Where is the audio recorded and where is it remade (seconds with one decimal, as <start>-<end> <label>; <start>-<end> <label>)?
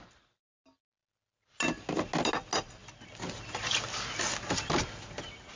0.0-5.6 recorded